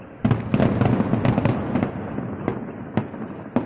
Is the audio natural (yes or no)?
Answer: yes